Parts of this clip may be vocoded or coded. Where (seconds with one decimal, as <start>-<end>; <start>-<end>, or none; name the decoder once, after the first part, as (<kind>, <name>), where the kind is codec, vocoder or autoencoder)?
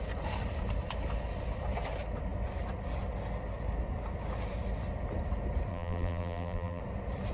5.7-6.8 (vocoder, BigVGAN v2)